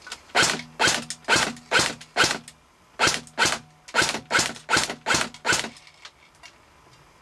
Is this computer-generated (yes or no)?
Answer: no